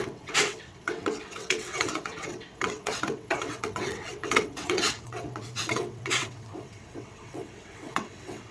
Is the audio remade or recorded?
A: remade